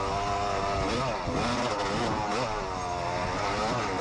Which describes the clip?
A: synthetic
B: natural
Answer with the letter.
B